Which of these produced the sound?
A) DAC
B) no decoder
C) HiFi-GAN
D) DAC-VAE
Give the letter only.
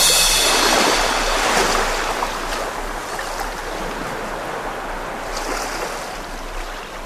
B